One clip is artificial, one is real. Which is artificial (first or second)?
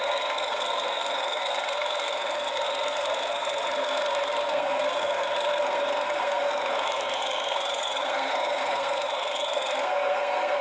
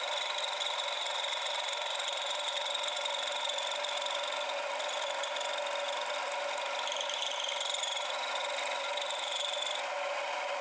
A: first